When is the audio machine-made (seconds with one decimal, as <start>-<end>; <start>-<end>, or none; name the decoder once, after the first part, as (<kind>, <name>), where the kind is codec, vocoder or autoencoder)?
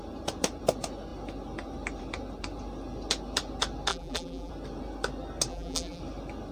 3.9-4.5 (vocoder, BigVGAN v2); 5.5-6.0